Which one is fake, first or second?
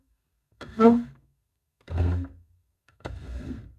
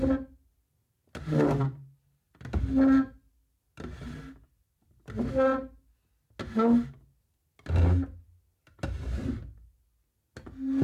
first